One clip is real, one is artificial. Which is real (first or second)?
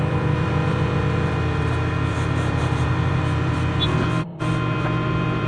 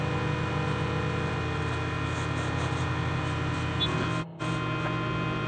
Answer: second